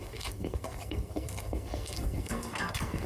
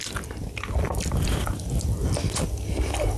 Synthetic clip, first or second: first